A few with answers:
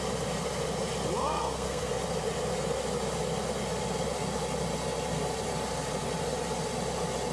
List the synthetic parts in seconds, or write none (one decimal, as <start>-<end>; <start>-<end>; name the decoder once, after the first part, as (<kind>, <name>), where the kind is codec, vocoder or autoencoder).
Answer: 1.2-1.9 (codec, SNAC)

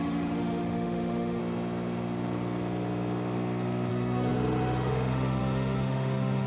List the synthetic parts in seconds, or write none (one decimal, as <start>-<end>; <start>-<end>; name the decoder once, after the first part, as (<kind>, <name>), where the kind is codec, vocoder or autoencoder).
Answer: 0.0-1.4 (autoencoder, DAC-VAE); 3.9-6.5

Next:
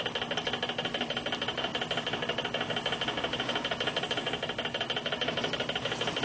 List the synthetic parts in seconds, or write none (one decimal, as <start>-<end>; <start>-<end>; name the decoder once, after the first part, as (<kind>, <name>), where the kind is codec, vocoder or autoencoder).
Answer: none